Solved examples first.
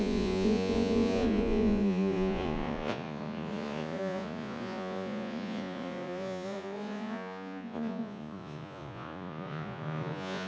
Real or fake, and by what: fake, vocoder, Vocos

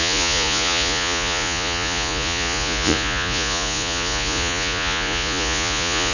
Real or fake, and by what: fake, vocoder, Vocos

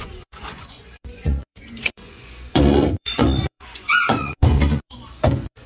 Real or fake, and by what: fake, vocoder, Vocos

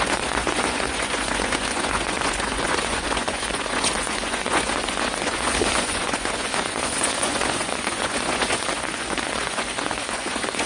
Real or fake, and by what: fake, vocoder, Vocos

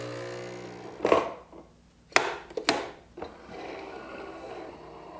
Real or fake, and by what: real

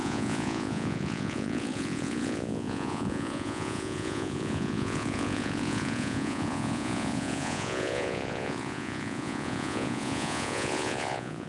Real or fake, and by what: fake, vocoder, Vocos